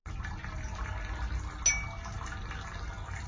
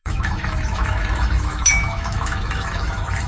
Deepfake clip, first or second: second